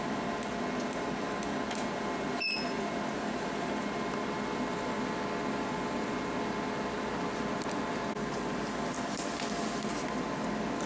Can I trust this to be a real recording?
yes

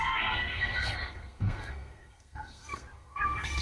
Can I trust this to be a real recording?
no